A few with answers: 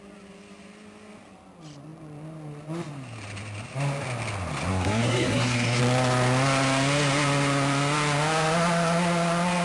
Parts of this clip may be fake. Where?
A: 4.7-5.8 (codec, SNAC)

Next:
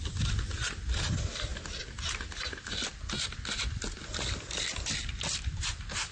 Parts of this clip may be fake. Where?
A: none

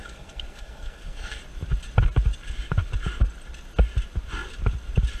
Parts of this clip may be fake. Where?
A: 0.0-1.4 (codec, SNAC)

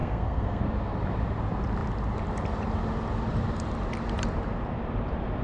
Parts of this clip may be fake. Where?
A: 0.0-0.6 (codec, SNAC)

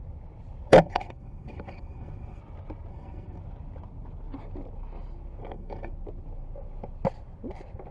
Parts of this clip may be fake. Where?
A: 0.7-2.4 (codec, SNAC); 2.9-3.4; 5.4-5.9

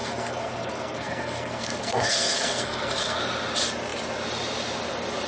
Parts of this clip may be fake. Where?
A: 0.0-3.2 (codec, SNAC)